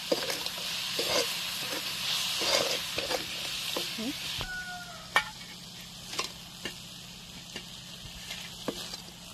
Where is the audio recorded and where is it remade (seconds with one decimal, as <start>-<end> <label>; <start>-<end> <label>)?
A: 0.0-9.3 recorded